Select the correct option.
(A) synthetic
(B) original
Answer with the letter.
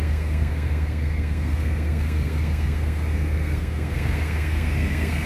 A